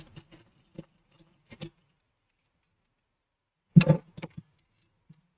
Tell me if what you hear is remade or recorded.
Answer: recorded